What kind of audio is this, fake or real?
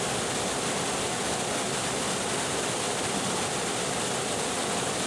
real